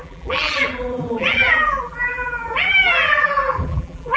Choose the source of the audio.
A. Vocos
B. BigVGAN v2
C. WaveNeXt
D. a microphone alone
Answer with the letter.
B